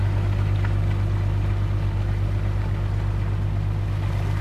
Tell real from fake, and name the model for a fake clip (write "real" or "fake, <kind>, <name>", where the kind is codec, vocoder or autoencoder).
real